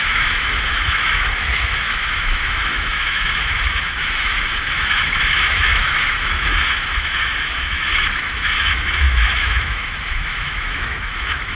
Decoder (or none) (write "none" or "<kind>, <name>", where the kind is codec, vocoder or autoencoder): autoencoder, DAC-VAE